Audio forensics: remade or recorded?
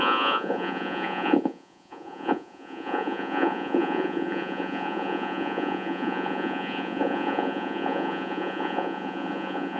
remade